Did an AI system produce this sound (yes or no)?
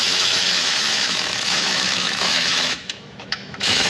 yes